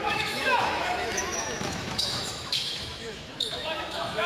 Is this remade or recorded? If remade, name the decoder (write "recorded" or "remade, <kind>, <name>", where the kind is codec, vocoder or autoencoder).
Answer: remade, autoencoder, DAC-VAE